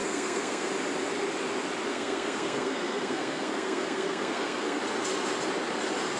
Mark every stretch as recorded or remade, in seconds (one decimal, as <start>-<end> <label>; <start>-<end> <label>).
0.0-0.7 remade; 0.7-1.9 recorded; 1.9-4.8 remade; 4.8-6.2 recorded

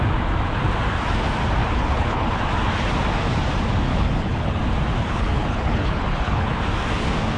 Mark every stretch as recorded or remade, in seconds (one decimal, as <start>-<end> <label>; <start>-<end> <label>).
0.0-1.6 recorded; 1.6-2.4 remade; 2.4-3.9 recorded; 3.9-4.6 remade; 4.6-5.0 recorded; 5.0-6.5 remade; 6.5-7.4 recorded

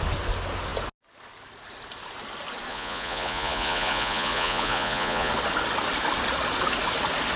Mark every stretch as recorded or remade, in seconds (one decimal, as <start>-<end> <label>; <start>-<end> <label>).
0.0-2.7 recorded; 2.7-5.3 remade; 5.3-7.4 recorded

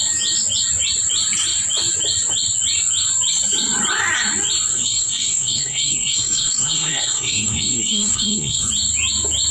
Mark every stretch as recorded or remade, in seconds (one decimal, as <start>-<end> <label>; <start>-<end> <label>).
0.0-4.7 recorded; 4.7-8.7 remade; 8.7-9.5 recorded

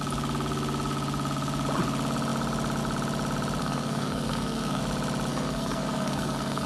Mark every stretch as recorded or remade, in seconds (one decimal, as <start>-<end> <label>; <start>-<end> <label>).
0.0-3.6 recorded; 3.6-4.8 remade; 4.8-5.3 recorded; 5.3-6.7 remade

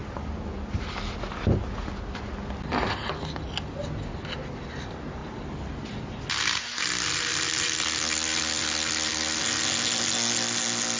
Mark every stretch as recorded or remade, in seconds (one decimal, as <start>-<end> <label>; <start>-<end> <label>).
0.0-11.0 recorded

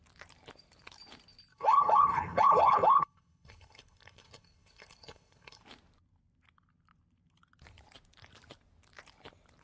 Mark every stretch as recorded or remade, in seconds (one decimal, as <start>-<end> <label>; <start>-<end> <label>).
0.0-1.5 recorded; 1.5-5.6 remade; 5.6-9.6 recorded